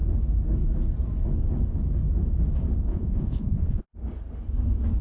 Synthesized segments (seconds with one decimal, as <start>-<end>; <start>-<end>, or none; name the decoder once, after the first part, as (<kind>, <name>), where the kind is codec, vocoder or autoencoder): 2.9-3.8 (vocoder, Vocos)